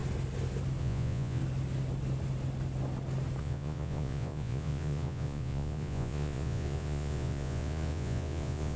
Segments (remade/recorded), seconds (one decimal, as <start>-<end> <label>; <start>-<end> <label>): 0.0-0.8 recorded; 0.8-1.4 remade; 1.4-3.4 recorded; 3.4-8.8 remade